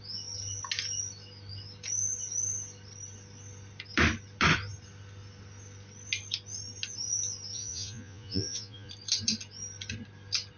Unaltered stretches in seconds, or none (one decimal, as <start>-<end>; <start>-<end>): 0.0-7.5; 8.9-10.6

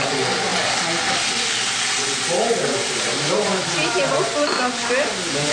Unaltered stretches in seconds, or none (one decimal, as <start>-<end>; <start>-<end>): 0.0-2.8; 4.3-5.5

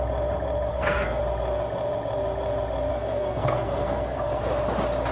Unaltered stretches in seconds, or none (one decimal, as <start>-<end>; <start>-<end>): 0.0-0.7; 1.2-2.9; 4.4-5.1

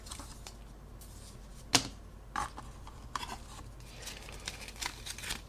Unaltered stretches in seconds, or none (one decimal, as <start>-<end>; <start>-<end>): 0.0-5.5

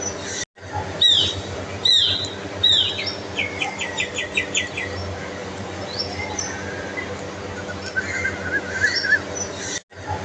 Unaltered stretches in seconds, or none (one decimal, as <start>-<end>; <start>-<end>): 0.0-5.4; 6.0-10.2